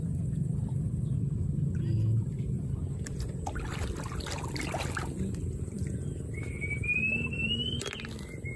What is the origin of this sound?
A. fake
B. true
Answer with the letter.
B